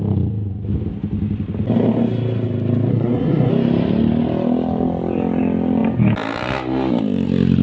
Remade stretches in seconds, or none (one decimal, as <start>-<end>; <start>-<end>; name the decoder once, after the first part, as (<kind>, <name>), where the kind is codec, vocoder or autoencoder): 2.9-3.5 (codec, SNAC)